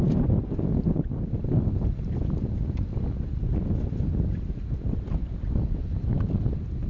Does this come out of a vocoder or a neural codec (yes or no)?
no